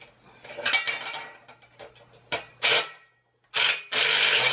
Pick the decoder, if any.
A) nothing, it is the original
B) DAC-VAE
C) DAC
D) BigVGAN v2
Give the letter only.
A